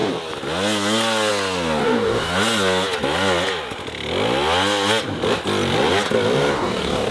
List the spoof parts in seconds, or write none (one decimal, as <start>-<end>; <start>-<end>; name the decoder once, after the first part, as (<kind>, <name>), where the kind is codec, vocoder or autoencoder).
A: 1.8-2.3 (codec, DAC); 6.5-7.1